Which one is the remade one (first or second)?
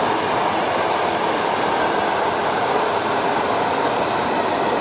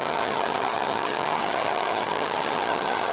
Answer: second